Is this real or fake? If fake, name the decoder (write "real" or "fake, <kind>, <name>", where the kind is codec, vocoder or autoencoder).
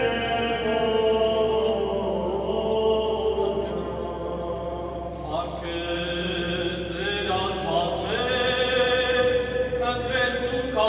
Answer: real